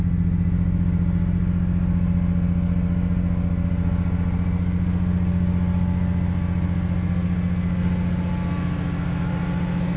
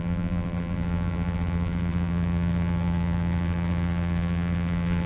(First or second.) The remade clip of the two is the second